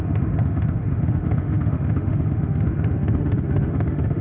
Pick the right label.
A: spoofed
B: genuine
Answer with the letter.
A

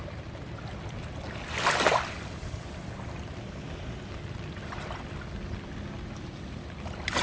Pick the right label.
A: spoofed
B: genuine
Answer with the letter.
B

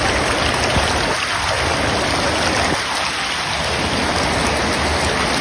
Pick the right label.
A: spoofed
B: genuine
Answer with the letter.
B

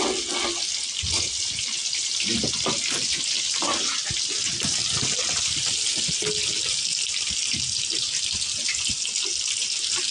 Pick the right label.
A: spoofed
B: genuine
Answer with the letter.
B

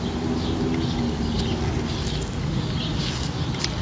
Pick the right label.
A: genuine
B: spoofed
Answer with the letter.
A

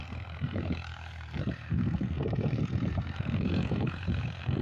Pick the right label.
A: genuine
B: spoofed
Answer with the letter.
B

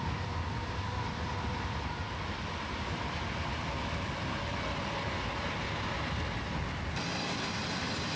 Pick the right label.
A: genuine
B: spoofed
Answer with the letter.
A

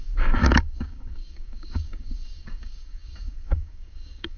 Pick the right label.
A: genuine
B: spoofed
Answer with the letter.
B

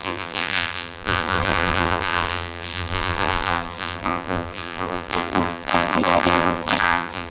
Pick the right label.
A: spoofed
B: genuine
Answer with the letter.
A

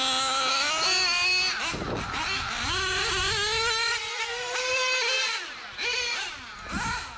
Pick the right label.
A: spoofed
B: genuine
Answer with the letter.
B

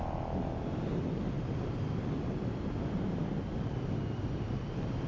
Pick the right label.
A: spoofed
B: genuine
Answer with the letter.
B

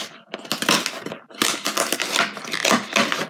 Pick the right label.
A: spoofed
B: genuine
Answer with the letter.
B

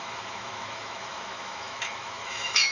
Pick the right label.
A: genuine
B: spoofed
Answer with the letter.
B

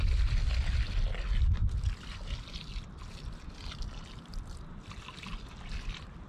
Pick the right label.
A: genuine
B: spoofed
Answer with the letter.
A